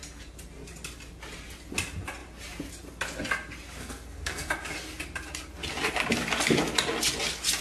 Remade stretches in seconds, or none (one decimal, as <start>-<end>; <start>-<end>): 3.8-4.5